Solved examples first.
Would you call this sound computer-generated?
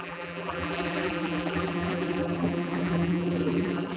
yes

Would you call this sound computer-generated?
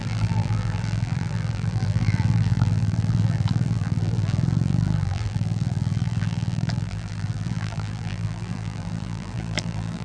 yes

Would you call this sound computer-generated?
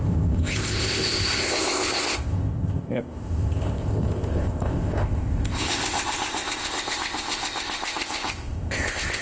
yes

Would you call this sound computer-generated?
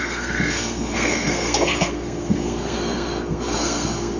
yes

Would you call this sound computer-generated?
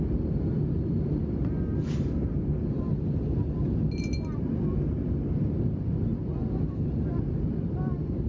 no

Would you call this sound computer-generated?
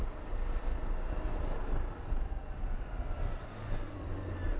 no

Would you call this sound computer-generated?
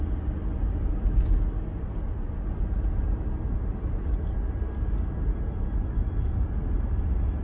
no